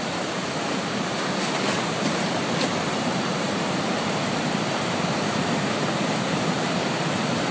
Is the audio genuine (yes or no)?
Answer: no